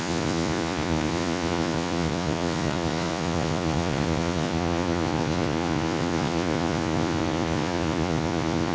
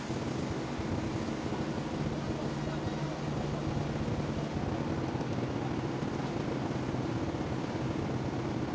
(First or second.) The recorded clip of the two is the second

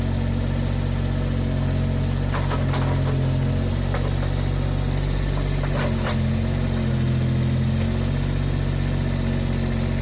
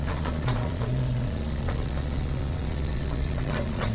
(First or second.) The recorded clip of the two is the first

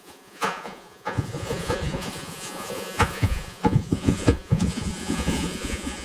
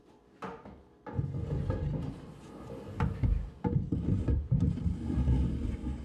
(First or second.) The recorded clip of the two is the second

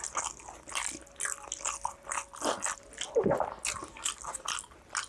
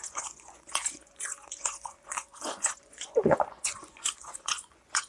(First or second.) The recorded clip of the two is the first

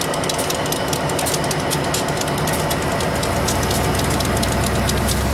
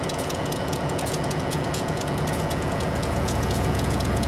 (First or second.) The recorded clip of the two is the first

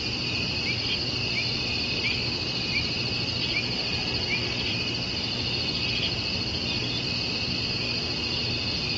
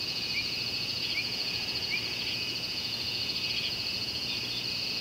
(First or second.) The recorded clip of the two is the first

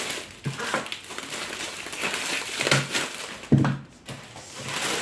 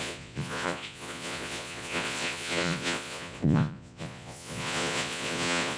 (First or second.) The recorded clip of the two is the first